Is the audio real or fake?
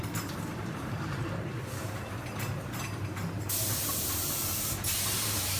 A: fake